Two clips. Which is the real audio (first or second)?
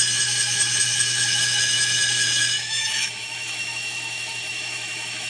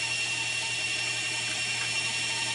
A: second